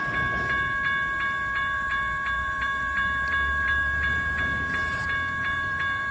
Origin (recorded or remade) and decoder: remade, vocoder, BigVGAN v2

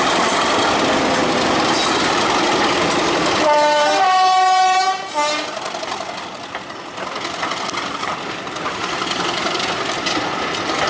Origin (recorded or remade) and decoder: recorded